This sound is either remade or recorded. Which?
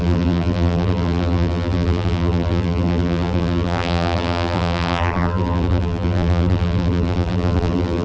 remade